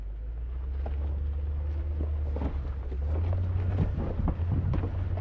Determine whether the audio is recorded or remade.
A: recorded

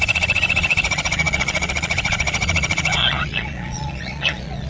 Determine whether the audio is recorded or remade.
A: remade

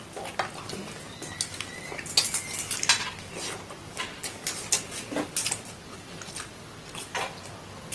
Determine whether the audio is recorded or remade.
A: recorded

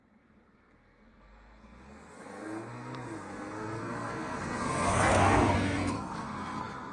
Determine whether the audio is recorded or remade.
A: remade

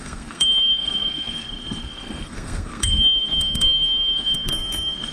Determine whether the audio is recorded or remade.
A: remade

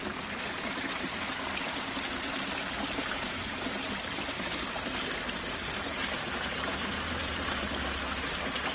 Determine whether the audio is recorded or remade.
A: recorded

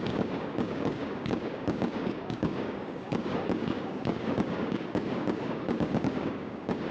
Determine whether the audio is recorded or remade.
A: remade